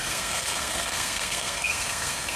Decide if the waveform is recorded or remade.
remade